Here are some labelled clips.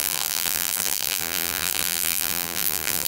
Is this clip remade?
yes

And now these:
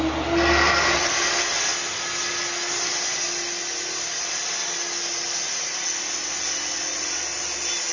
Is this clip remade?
no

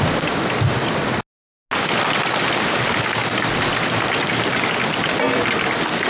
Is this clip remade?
no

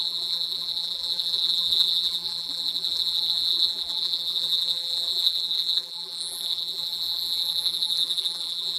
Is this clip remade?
yes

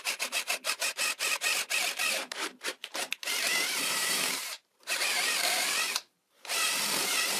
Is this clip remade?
yes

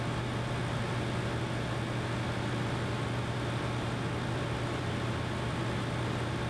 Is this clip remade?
no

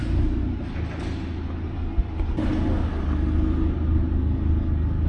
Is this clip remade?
no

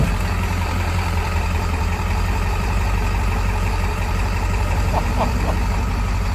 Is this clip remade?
yes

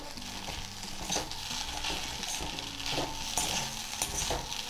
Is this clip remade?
no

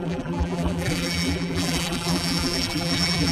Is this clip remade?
yes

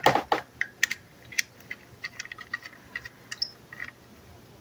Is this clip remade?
no